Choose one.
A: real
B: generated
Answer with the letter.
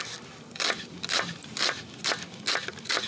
A